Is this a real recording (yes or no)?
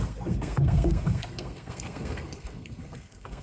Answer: no